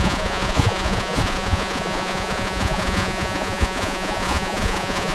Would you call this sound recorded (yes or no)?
no